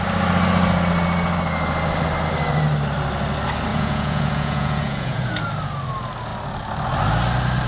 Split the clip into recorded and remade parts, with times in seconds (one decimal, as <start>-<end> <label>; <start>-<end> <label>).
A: 0.0-3.7 recorded; 3.7-5.3 remade; 5.3-7.7 recorded